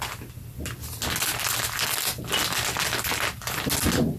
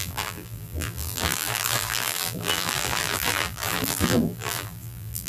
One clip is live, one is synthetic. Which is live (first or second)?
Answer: first